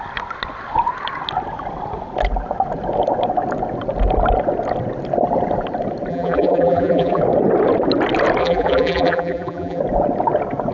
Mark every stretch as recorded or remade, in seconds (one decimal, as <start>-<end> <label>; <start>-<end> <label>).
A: 0.0-6.1 recorded; 6.1-7.2 remade; 7.2-8.4 recorded; 8.4-9.8 remade; 9.8-10.7 recorded